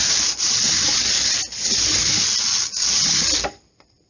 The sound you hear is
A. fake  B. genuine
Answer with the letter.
A